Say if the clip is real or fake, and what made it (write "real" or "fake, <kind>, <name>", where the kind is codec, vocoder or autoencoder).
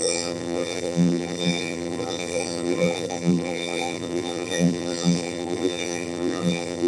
fake, vocoder, BigVGAN v2